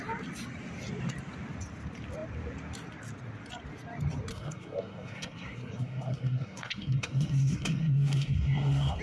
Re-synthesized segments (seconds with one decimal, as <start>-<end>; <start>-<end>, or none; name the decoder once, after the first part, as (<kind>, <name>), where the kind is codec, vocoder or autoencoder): 4.3-9.0 (codec, SNAC)